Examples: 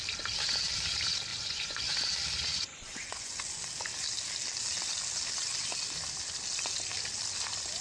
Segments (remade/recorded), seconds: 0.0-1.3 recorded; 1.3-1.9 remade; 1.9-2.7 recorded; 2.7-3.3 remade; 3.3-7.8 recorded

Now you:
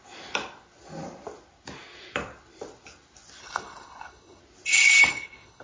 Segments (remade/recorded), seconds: 0.0-3.4 recorded; 3.4-4.4 remade; 4.4-5.1 recorded; 5.1-5.6 remade

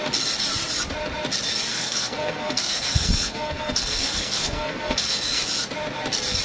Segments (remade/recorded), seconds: 0.0-1.7 recorded; 1.7-5.4 remade; 5.4-6.4 recorded

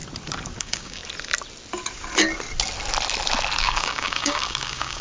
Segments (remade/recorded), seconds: 0.0-0.6 recorded; 0.6-1.0 remade; 1.0-3.6 recorded; 3.6-5.0 remade

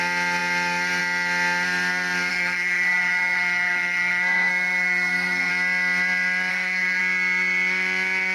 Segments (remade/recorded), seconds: 0.0-2.3 recorded; 2.3-5.5 remade; 5.5-6.5 recorded; 6.5-7.0 remade; 7.0-8.3 recorded

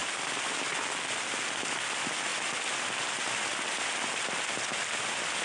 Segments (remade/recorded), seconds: 0.0-5.4 recorded

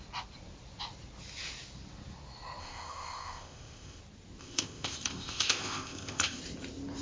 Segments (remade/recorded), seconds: 0.0-2.6 recorded; 2.6-4.0 remade; 4.0-4.4 recorded; 4.4-6.4 remade; 6.4-7.0 recorded